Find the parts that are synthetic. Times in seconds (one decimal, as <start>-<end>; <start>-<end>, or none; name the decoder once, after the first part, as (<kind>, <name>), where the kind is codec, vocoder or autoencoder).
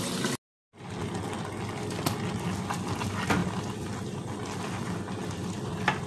none